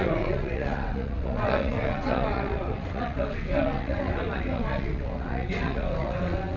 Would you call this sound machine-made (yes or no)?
yes